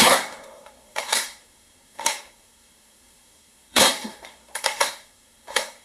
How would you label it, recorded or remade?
remade